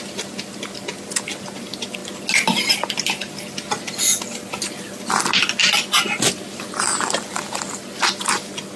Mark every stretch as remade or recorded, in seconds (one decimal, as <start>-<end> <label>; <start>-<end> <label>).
0.0-8.8 recorded